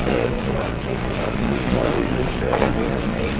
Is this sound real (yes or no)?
no